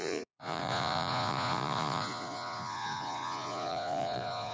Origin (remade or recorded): remade